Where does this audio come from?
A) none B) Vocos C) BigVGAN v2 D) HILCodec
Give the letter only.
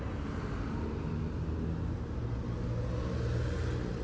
A